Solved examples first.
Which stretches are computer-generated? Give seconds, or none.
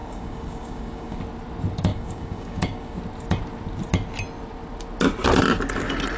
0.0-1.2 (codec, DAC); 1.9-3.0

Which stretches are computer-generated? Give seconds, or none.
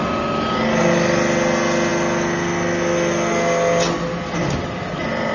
none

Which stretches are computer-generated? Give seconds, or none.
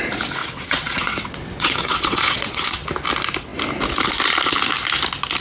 0.4-2.9 (vocoder, WaveNeXt)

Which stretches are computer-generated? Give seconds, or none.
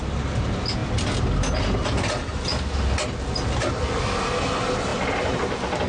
none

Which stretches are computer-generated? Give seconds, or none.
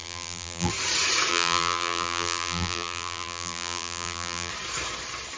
0.0-0.7 (vocoder, BigVGAN v2); 1.3-4.5